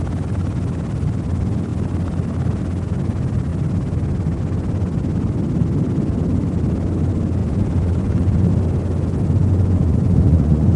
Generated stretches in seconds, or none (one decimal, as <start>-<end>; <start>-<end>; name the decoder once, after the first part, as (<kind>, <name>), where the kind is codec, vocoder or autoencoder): 7.4-8.5 (vocoder, Vocos); 9.4-10.8